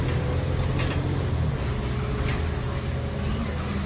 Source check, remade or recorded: recorded